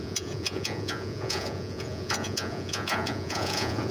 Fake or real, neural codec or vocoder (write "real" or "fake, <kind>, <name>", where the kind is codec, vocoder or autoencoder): fake, vocoder, Vocos